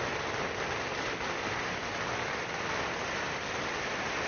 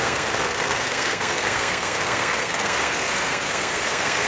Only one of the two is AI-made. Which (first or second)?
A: second